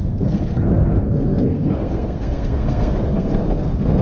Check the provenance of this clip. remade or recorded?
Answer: remade